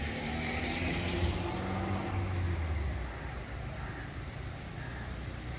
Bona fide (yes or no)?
yes